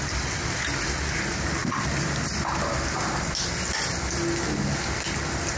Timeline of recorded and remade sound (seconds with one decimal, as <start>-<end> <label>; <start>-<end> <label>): 0.0-5.6 recorded